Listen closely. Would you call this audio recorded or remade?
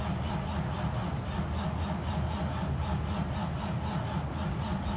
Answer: recorded